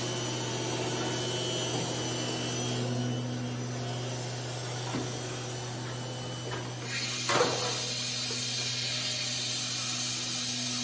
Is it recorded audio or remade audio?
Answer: recorded